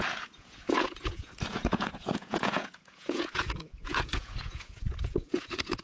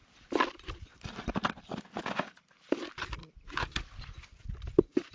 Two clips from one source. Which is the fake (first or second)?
first